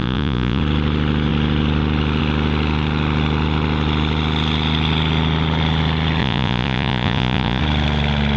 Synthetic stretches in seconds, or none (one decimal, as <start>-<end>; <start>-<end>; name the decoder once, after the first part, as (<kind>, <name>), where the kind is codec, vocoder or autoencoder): 0.0-0.6 (vocoder, Vocos); 6.2-7.6